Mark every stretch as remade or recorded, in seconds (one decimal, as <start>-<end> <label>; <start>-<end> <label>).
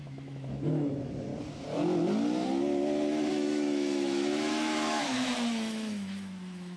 0.0-1.3 remade; 1.3-3.3 recorded; 3.3-6.8 remade